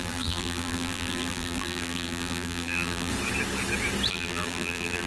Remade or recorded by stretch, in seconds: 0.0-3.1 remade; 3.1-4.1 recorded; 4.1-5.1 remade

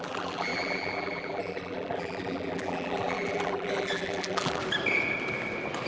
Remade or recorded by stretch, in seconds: 0.0-4.6 remade; 4.6-5.9 recorded

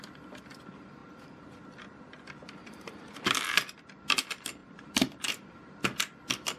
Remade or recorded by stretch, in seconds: 0.0-2.6 recorded; 2.6-3.2 remade; 3.2-4.6 recorded; 4.6-5.8 remade; 5.8-6.6 recorded

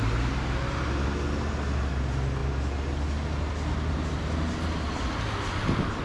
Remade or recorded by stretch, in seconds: 0.0-6.0 recorded

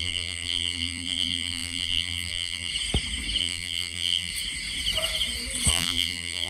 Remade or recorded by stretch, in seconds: 0.0-2.7 remade; 2.7-3.4 recorded; 3.4-4.3 remade; 4.3-5.7 recorded; 5.7-6.5 remade